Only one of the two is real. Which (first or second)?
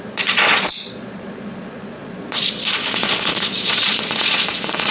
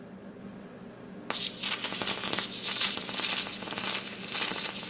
second